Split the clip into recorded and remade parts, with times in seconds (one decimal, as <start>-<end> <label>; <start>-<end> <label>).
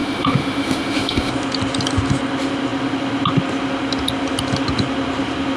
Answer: 0.0-1.3 remade; 1.3-5.6 recorded